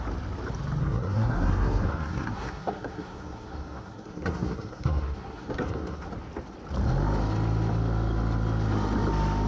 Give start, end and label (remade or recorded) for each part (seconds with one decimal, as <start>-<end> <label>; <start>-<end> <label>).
0.0-0.8 recorded; 0.8-6.1 remade; 6.1-9.5 recorded